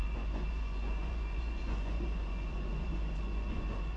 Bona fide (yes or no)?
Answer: no